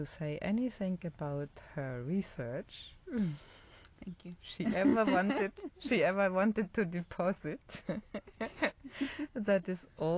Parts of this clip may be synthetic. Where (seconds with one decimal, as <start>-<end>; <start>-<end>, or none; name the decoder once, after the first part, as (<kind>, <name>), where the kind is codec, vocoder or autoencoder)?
none